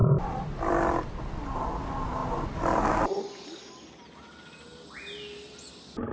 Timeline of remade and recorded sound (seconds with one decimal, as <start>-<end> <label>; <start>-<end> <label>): 0.0-6.1 recorded